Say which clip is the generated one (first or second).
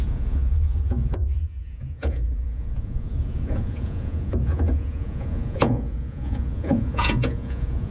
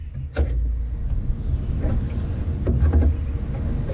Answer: first